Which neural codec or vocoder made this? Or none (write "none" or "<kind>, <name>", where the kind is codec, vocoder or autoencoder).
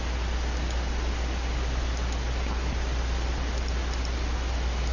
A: none